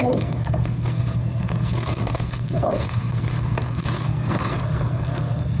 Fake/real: fake